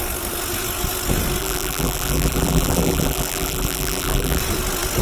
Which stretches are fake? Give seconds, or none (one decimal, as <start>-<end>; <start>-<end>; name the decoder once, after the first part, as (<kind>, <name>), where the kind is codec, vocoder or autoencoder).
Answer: 1.4-4.4 (vocoder, BigVGAN v2)